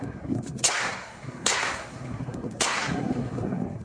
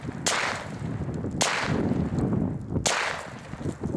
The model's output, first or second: first